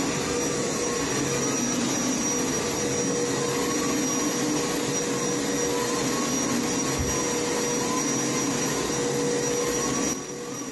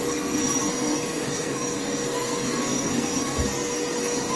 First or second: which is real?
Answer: first